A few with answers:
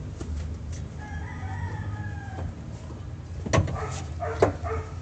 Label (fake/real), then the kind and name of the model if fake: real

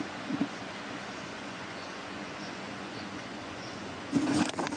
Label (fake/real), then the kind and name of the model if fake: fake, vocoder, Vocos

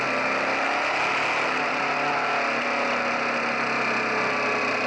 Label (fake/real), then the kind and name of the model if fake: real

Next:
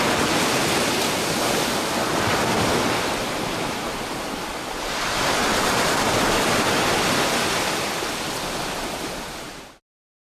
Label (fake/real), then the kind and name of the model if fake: real